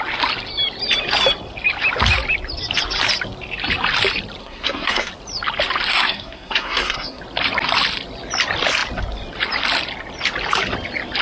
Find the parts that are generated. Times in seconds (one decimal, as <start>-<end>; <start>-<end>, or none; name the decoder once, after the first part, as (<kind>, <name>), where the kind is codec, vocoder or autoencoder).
4.4-5.1 (codec, SNAC); 5.9-7.2